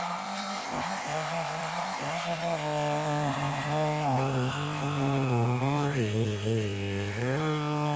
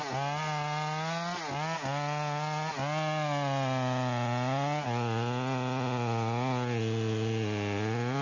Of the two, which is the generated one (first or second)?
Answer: first